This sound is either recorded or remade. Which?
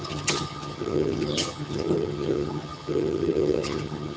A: remade